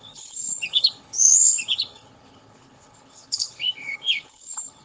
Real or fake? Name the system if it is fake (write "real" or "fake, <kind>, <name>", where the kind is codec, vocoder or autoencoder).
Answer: fake, codec, HILCodec